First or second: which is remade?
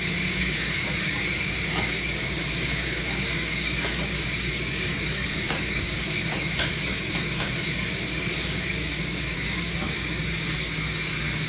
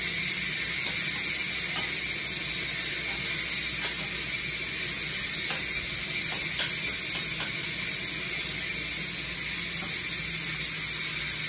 first